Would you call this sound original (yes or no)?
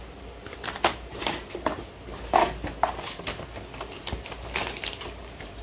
yes